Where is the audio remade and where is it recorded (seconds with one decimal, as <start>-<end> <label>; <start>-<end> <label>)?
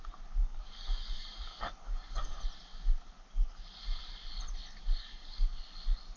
0.0-0.4 recorded; 0.4-2.4 remade; 2.4-5.0 recorded; 5.0-5.6 remade; 5.6-6.2 recorded